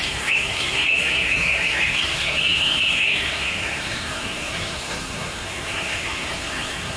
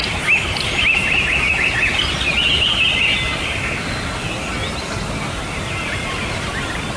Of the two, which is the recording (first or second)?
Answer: second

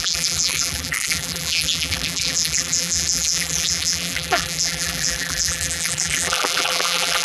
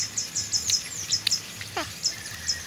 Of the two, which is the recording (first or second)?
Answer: second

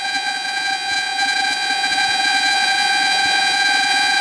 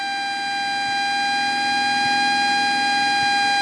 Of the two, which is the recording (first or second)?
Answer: second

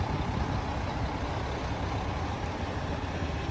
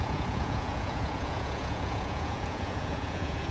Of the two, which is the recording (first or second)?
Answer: first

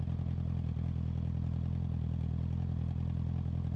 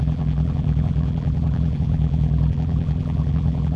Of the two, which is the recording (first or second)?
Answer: first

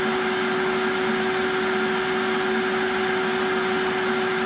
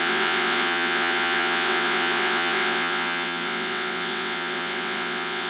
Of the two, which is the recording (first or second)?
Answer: first